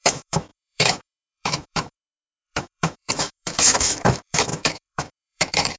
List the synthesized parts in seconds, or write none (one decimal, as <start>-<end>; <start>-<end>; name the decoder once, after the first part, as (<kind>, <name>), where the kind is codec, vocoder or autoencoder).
0.0-5.8 (autoencoder, DAC-VAE)